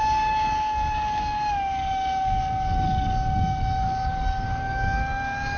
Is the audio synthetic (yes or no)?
yes